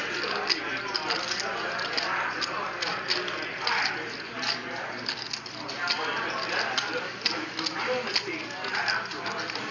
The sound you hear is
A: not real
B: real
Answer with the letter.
B